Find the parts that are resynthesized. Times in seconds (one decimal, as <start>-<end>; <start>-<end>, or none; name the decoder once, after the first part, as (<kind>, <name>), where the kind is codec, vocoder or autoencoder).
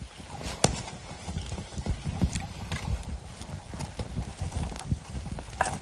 0.7-3.3 (vocoder, BigVGAN v2); 4.3-5.1